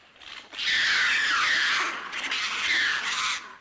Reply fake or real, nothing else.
real